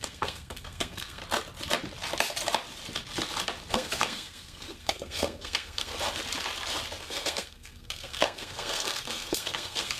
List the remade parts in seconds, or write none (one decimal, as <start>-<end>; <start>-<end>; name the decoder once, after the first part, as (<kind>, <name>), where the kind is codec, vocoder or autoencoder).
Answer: 0.0-1.2 (codec, SNAC); 3.7-5.9; 7.0-10.0